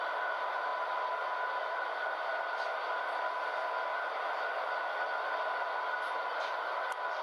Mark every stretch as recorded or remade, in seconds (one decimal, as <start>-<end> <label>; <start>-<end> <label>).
0.0-7.2 recorded